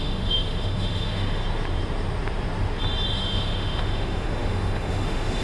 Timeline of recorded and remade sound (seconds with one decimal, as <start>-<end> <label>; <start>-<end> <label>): 0.0-1.4 remade; 1.4-3.1 recorded; 3.1-5.4 remade